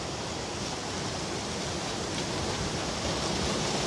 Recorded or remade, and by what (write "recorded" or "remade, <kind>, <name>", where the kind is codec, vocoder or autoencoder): recorded